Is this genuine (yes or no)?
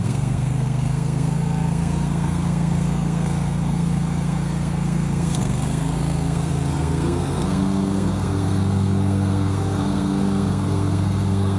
no